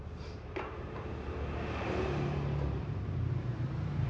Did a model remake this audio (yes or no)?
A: yes